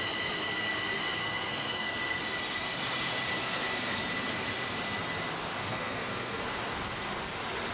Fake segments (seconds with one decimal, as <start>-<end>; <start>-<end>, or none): 1.2-2.2; 3.4-4.0; 5.6-6.4